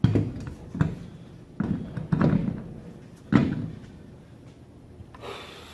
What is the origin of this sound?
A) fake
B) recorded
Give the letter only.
B